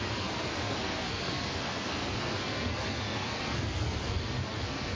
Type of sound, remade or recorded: remade